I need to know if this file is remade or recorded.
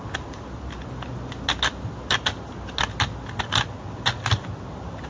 recorded